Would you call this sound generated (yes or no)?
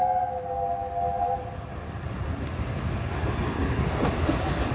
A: no